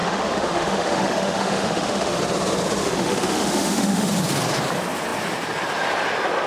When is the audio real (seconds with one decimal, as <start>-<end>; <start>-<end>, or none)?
2.2-2.8; 4.1-6.5